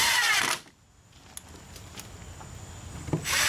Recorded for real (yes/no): yes